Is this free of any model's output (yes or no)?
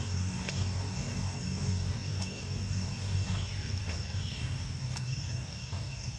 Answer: no